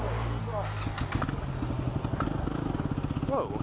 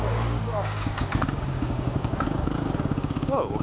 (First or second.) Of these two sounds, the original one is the first